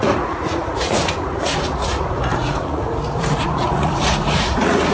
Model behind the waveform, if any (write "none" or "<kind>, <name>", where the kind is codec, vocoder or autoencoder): vocoder, Vocos